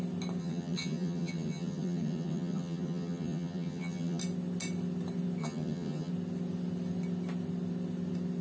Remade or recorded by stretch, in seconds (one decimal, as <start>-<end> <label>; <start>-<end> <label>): 0.0-0.4 recorded; 0.4-4.2 remade; 4.2-5.4 recorded; 5.4-6.1 remade; 6.1-8.4 recorded